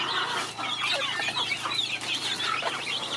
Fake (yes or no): no